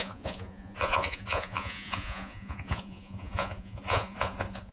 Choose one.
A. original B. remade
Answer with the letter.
B